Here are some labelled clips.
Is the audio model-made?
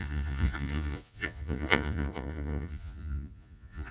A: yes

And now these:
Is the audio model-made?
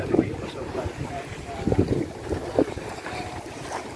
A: yes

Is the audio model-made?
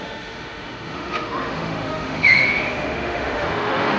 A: yes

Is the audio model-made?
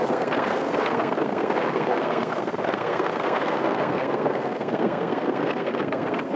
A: yes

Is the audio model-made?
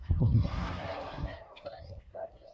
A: yes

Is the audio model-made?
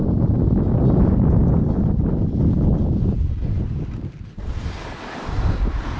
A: no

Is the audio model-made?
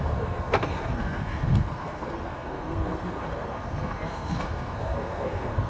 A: yes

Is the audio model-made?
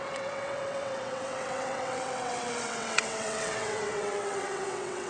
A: yes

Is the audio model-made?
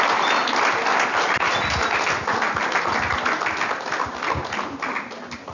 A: no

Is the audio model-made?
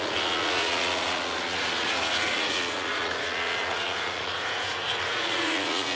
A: yes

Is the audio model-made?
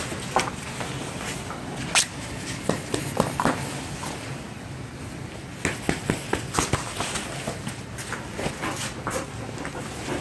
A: no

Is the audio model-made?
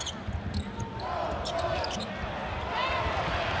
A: no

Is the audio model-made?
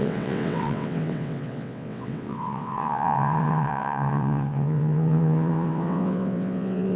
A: yes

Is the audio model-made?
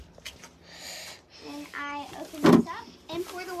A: no